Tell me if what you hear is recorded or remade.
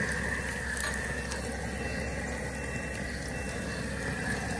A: recorded